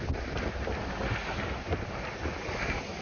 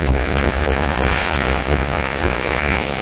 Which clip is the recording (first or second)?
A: first